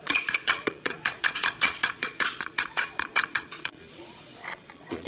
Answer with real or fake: fake